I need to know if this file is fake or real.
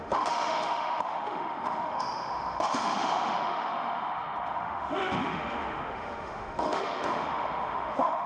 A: fake